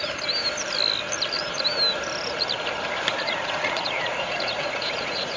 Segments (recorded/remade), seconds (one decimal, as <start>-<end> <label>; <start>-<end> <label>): 0.0-3.2 recorded; 3.2-5.4 remade